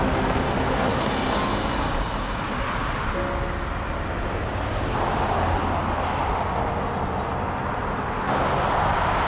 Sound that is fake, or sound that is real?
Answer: real